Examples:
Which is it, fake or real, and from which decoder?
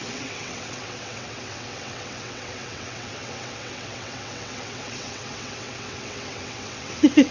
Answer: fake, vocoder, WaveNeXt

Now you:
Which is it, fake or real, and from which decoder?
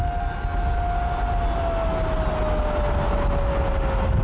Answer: real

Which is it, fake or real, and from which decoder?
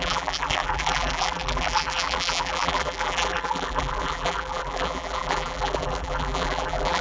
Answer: fake, vocoder, BigVGAN v2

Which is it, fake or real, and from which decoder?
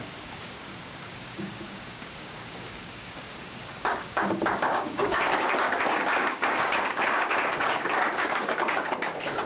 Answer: fake, codec, DAC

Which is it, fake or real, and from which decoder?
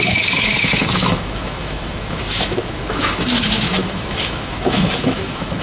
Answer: fake, autoencoder, DAC-VAE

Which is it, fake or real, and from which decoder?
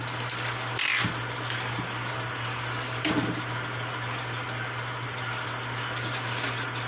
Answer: real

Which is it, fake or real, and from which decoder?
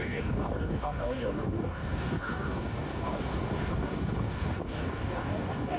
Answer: fake, codec, DAC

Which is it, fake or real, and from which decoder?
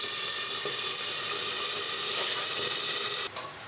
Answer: real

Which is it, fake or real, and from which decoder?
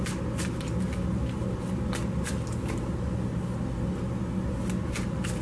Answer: real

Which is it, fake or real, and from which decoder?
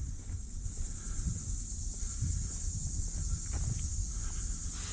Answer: real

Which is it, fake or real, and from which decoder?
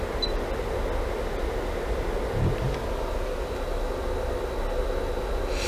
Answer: real